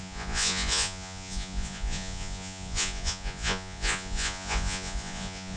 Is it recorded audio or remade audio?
remade